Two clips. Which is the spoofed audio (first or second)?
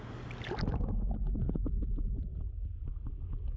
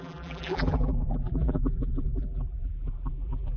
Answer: second